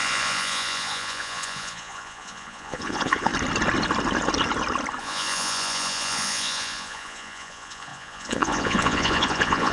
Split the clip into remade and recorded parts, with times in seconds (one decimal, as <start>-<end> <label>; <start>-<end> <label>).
0.0-3.3 remade; 3.3-5.0 recorded; 5.0-9.7 remade